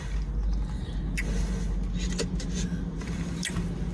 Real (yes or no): yes